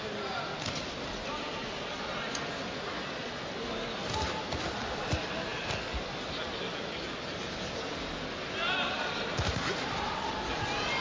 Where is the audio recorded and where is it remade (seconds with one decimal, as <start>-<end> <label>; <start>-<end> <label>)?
0.0-11.0 recorded